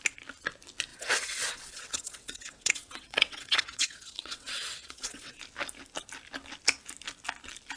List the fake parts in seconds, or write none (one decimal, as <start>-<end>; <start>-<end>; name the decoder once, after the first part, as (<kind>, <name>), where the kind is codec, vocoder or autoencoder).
0.9-5.4 (vocoder, WaveNeXt)